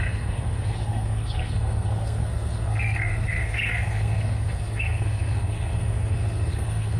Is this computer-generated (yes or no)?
yes